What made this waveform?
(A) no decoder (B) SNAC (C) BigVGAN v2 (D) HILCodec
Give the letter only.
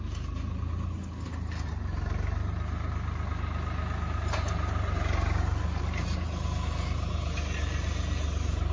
A